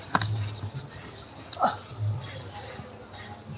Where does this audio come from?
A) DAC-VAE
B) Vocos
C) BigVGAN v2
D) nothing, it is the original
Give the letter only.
D